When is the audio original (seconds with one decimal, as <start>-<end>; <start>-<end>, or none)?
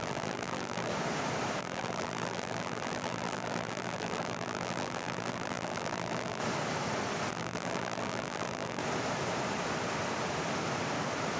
0.9-1.6; 6.4-7.3; 8.8-11.4